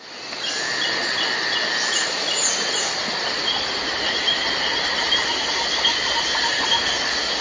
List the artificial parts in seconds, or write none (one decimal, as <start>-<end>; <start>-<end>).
none